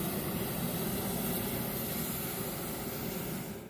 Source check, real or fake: real